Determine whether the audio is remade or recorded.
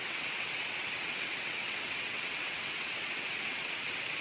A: remade